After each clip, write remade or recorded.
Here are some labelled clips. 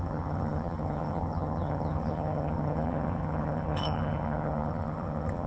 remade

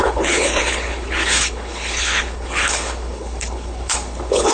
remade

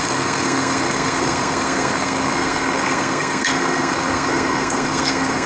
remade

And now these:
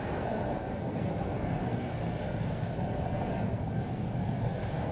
remade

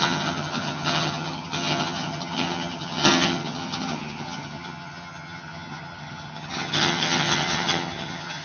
remade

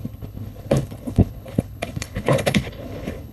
remade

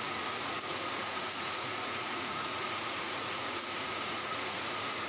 remade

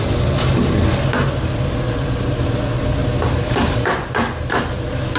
recorded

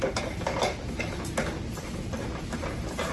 recorded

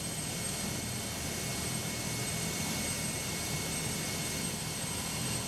remade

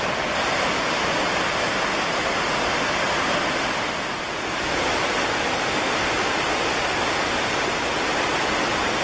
recorded